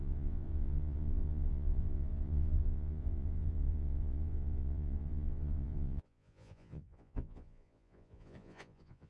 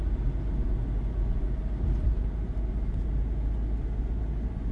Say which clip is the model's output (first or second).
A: first